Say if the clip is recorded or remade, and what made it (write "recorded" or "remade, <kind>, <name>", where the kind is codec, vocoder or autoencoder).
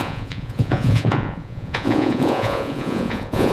remade, vocoder, Vocos